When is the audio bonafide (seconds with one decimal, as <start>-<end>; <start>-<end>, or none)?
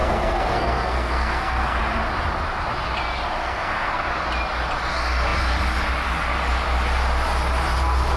1.8-3.4; 4.1-8.2